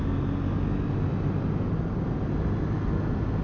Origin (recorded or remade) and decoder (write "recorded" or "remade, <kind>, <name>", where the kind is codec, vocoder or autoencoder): recorded